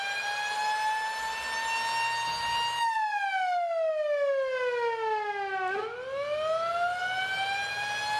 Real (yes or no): yes